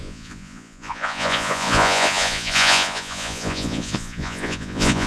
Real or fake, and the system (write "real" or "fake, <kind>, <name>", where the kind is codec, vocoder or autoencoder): fake, vocoder, Vocos